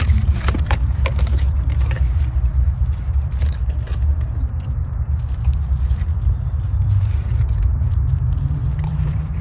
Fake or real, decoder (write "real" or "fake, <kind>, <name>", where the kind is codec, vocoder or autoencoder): fake, vocoder, BigVGAN v2